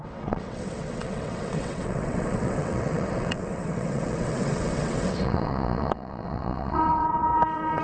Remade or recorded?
remade